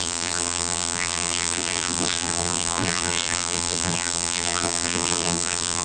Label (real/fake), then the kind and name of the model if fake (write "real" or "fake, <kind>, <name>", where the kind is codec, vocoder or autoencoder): fake, vocoder, BigVGAN v2